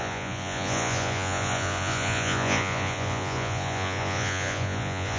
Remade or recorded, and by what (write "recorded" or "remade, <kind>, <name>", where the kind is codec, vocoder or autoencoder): remade, vocoder, Vocos